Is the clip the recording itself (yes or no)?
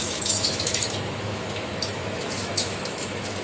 no